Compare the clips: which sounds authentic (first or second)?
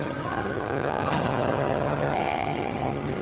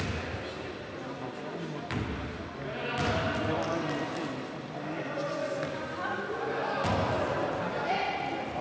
second